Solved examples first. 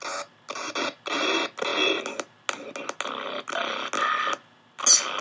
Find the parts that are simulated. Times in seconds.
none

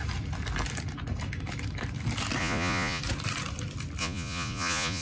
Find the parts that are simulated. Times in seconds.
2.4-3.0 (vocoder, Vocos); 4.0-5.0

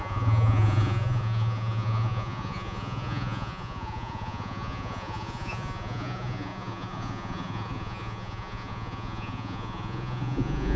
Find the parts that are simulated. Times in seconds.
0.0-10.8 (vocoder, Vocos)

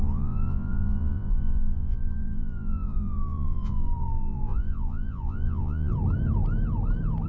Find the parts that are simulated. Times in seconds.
0.0-5.9 (vocoder, Vocos)

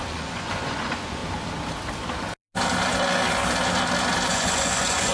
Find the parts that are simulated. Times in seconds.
0.0-1.2 (vocoder, Vocos); 4.3-5.1

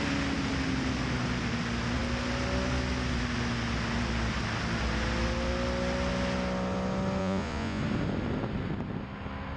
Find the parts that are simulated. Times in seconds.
7.2-7.8 (vocoder, Vocos)